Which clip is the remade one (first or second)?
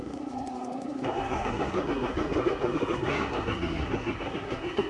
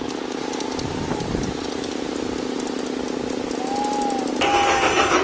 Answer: first